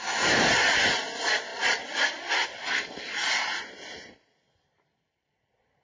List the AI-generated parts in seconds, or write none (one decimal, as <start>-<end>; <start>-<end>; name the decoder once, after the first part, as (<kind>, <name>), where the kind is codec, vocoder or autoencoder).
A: none